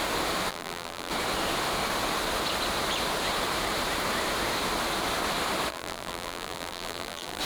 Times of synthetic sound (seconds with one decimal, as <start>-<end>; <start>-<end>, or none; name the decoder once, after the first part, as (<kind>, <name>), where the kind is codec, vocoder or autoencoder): 0.5-1.1 (vocoder, BigVGAN v2); 5.7-7.4